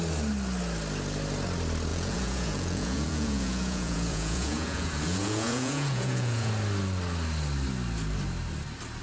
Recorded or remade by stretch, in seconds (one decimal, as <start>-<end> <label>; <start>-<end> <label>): 0.0-1.9 recorded; 1.9-6.5 remade; 6.5-9.0 recorded